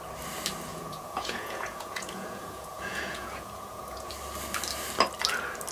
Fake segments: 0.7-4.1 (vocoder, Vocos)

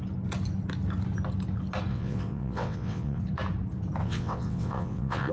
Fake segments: 1.9-3.2 (vocoder, WaveNeXt); 4.0-5.3

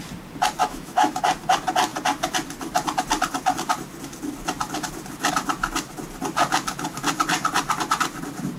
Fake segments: 0.6-1.2 (autoencoder, DAC-VAE)

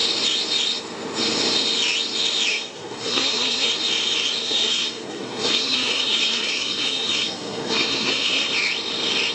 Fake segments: 2.5-3.7 (codec, SNAC); 4.4-8.5